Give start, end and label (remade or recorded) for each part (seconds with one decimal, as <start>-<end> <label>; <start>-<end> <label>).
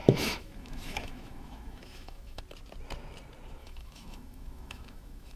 0.0-2.4 remade; 2.4-3.6 recorded; 3.6-5.4 remade